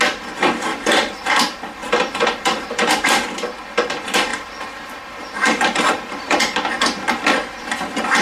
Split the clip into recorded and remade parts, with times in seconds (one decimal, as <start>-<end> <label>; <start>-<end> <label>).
0.0-0.7 recorded; 0.7-1.3 remade; 1.3-1.8 recorded; 1.8-2.9 remade; 2.9-4.3 recorded; 4.3-6.4 remade; 6.4-8.2 recorded